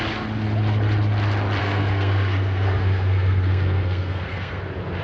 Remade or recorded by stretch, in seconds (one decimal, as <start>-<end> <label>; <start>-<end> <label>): 0.0-1.6 recorded; 1.6-4.6 remade; 4.6-5.0 recorded